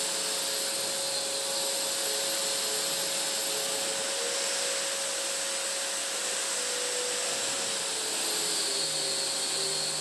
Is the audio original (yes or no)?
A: yes